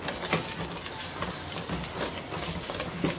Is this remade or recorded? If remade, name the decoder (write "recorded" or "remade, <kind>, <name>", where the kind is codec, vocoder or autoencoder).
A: recorded